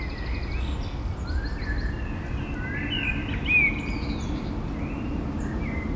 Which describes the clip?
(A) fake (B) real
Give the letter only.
B